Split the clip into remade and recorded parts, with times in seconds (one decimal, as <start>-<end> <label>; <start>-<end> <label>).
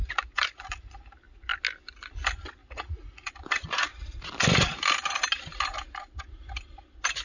0.0-1.0 remade; 1.0-2.6 recorded; 2.6-3.3 remade; 3.3-7.2 recorded